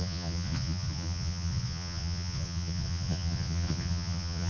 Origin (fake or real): fake